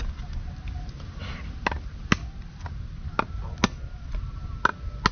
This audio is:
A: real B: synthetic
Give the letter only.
A